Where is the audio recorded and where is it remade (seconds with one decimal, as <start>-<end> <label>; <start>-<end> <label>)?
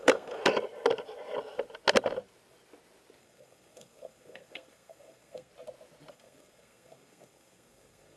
0.0-0.4 remade; 0.4-3.2 recorded; 3.2-5.5 remade; 5.5-6.1 recorded; 6.1-8.2 remade